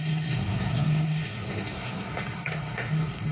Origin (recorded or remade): remade